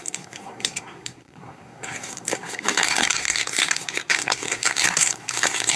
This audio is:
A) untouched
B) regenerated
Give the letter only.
B